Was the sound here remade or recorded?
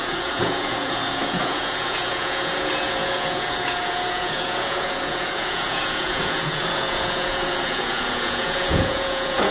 remade